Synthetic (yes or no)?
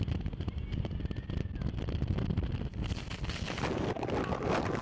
no